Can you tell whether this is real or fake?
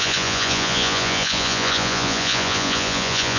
fake